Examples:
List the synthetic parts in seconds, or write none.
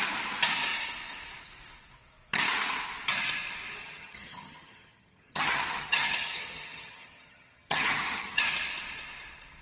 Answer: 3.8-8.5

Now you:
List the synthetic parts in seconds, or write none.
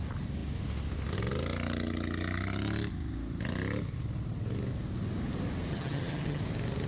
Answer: 5.7-6.4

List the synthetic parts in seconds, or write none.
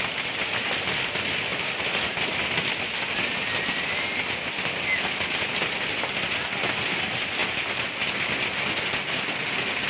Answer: none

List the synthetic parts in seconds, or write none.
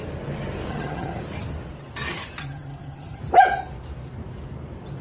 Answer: 0.7-1.2; 2.4-3.2